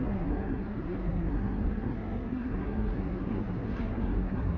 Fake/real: fake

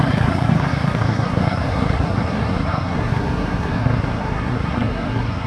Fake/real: fake